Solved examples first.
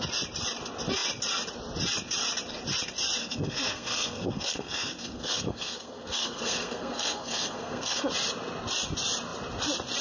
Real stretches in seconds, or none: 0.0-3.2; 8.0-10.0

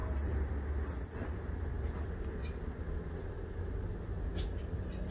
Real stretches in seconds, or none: 0.0-5.1

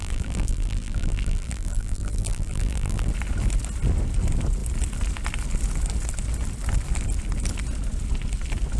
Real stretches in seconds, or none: 3.1-8.8

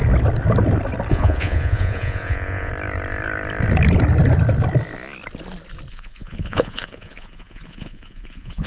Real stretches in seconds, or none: 0.0-1.1; 2.7-5.9

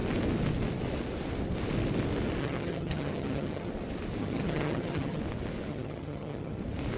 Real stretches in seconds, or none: 0.0-2.4; 3.7-4.2; 5.2-5.7; 6.6-7.0